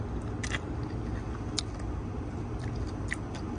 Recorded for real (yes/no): yes